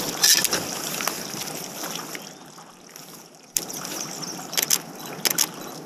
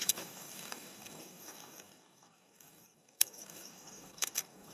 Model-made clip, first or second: second